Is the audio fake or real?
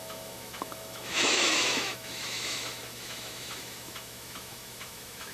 fake